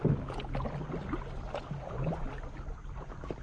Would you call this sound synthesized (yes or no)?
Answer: no